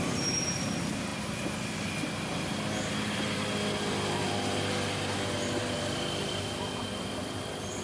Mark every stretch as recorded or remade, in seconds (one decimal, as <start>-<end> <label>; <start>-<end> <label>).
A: 0.0-7.8 recorded